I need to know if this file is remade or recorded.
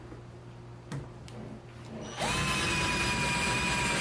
recorded